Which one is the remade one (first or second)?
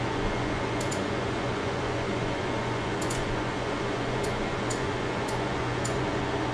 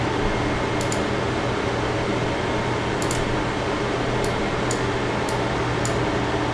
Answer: first